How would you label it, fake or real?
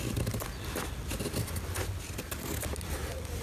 real